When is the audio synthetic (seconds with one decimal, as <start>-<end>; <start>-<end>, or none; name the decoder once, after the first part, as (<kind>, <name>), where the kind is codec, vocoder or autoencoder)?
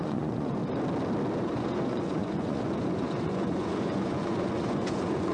0.0-0.6 (vocoder, Vocos); 1.4-5.3